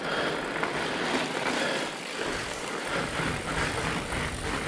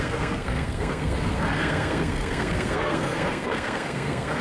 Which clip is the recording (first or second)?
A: first